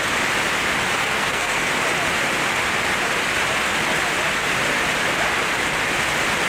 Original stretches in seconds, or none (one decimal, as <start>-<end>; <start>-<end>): 0.0-1.0; 1.7-6.5